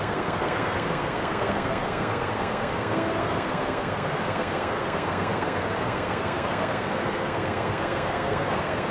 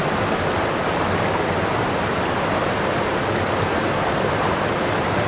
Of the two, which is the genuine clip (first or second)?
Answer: second